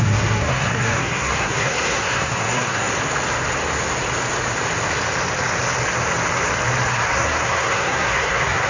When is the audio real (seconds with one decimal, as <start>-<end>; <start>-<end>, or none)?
2.9-6.9